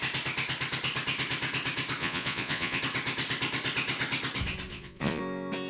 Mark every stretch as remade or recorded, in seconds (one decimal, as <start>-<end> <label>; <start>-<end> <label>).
0.0-2.0 recorded; 2.0-2.8 remade; 2.8-4.7 recorded; 4.7-5.2 remade; 5.2-5.7 recorded